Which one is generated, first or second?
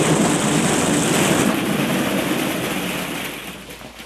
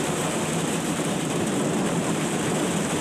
second